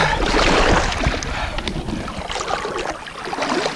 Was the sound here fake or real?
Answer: real